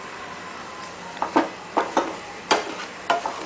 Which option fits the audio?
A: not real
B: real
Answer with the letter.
A